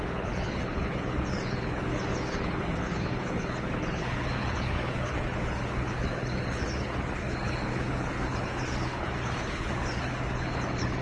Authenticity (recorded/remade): remade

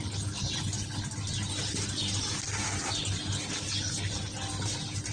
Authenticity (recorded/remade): recorded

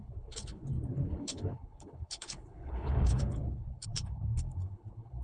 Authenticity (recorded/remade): remade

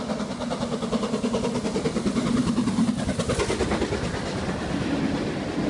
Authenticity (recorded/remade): recorded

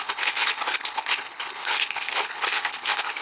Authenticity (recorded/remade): remade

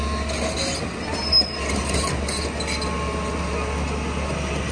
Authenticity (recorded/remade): recorded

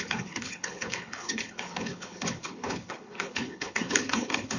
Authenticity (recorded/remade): remade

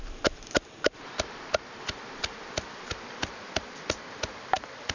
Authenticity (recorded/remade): recorded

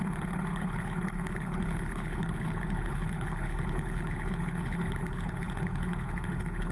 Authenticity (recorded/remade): remade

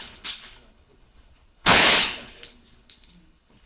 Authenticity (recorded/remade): remade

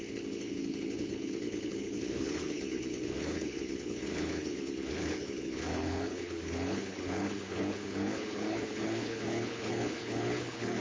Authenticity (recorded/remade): remade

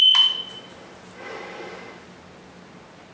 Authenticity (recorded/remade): recorded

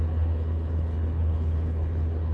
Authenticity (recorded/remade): remade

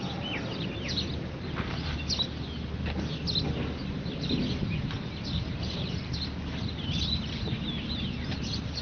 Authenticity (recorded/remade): recorded